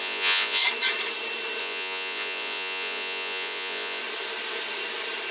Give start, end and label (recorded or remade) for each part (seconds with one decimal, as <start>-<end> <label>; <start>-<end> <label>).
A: 0.0-0.6 remade; 0.6-1.6 recorded; 1.6-4.0 remade; 4.0-5.3 recorded